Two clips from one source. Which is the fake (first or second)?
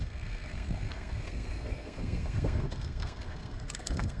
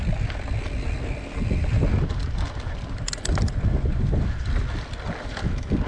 first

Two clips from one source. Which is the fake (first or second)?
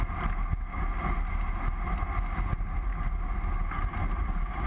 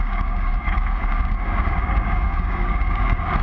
second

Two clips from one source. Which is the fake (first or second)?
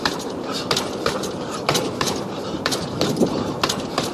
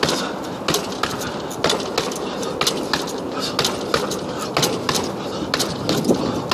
first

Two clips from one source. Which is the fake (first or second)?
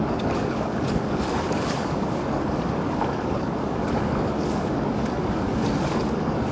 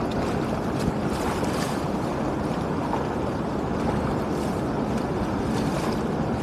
first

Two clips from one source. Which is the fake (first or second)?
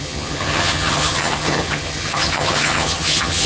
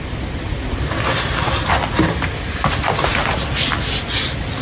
first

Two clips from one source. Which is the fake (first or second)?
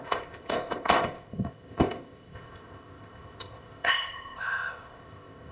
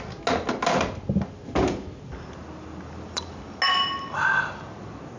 first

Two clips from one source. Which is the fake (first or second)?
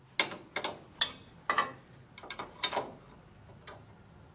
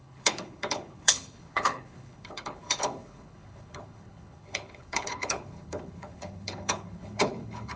second